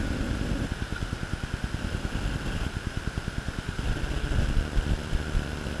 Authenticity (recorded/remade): recorded